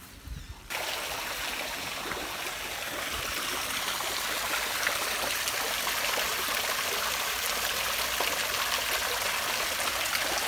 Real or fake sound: real